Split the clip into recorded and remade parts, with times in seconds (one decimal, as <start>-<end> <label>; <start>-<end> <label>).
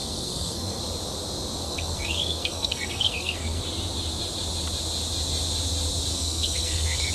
0.0-0.8 remade; 0.8-1.6 recorded; 1.6-3.6 remade; 3.6-6.1 recorded; 6.1-7.1 remade